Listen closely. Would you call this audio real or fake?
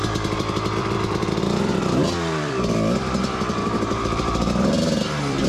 fake